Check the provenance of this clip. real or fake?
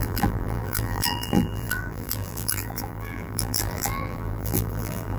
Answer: fake